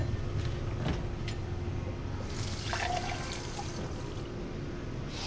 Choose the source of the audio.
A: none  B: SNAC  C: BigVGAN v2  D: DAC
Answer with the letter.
A